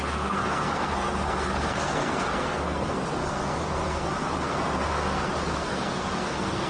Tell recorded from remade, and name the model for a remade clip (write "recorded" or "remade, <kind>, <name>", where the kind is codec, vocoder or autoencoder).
remade, codec, SNAC